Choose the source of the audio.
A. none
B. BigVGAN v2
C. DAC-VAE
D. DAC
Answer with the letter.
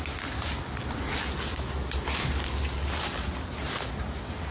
A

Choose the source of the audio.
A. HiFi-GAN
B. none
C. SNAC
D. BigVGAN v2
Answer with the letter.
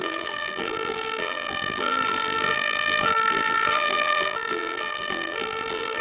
D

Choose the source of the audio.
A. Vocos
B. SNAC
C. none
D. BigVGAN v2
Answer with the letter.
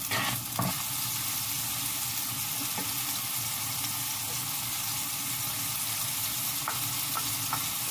C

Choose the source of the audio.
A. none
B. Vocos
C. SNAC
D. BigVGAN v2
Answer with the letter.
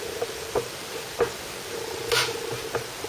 A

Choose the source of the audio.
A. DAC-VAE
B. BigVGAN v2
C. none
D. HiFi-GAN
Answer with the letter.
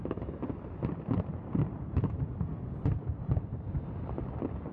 C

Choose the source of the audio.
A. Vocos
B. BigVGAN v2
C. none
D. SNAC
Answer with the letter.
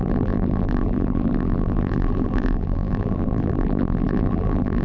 B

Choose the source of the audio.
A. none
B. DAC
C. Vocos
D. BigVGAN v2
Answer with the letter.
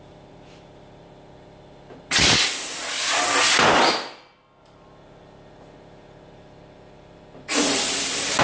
A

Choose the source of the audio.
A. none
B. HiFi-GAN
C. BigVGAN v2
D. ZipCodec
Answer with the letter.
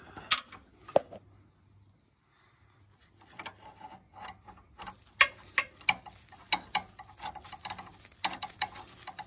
A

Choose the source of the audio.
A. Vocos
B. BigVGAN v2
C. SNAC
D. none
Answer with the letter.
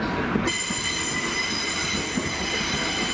D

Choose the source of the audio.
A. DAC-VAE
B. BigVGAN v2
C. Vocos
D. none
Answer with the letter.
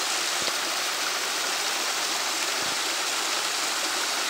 D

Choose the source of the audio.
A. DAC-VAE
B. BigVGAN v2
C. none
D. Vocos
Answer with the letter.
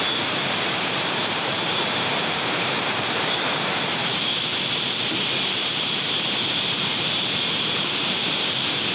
B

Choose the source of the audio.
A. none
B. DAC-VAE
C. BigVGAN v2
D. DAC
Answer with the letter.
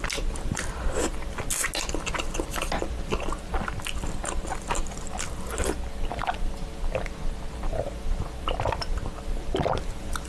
A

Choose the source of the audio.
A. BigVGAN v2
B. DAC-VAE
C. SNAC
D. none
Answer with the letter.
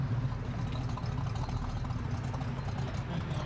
D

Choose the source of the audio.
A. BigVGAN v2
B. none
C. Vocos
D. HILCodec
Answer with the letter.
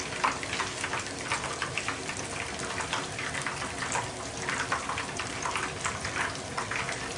A